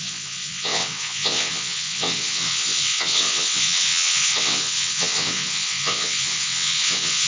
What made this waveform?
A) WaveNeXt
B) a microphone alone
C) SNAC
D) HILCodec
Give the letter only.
A